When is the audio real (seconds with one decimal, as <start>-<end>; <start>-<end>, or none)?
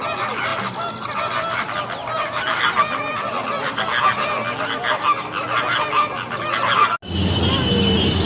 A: 0.0-8.3